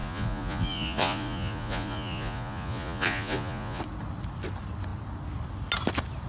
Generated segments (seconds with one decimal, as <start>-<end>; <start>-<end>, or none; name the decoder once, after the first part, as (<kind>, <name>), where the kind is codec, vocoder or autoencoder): 0.0-3.8 (vocoder, Vocos)